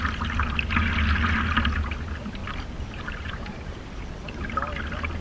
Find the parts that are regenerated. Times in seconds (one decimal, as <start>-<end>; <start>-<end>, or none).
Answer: 2.4-4.0

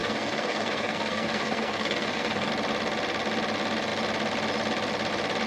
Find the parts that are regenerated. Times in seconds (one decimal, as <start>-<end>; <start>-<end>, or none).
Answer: 0.0-2.5

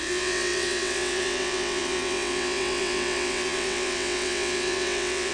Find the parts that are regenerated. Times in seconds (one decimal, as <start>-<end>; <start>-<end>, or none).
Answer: 0.0-5.3

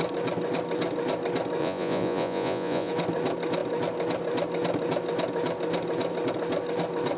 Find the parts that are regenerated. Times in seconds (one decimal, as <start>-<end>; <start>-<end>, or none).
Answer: 1.6-2.9

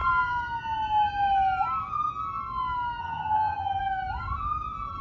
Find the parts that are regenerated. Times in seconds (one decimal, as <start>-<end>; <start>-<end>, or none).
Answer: 3.0-3.8

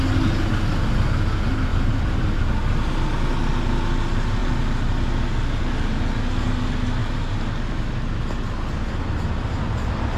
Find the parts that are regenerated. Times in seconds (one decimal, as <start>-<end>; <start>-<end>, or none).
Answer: none

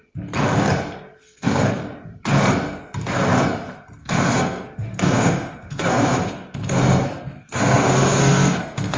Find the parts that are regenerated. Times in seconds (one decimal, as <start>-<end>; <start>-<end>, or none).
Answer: 1.2-1.8; 4.0-9.0

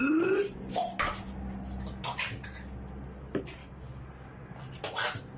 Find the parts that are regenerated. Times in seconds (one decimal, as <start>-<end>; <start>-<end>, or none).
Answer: none